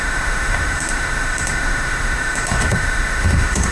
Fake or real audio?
fake